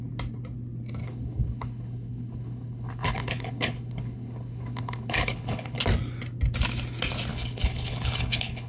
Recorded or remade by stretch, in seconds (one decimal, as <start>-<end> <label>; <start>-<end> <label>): 0.0-1.0 recorded; 1.0-5.8 remade; 5.8-7.3 recorded; 7.3-8.7 remade